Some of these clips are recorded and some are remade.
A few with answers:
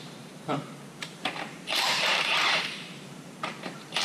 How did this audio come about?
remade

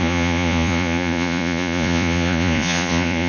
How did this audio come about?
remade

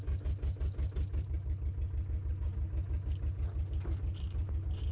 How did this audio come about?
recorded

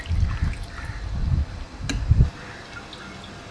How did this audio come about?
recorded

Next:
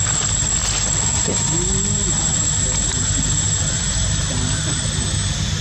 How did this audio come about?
recorded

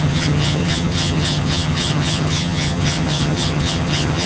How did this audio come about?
remade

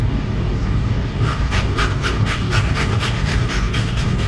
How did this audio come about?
remade